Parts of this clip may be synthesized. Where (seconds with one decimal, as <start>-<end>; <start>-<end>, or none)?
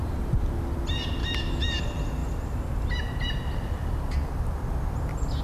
1.2-1.8